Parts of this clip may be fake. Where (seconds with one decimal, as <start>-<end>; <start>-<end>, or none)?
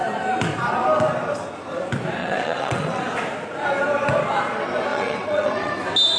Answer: 2.2-3.0; 4.9-5.7